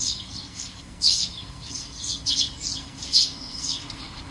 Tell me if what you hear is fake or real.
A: fake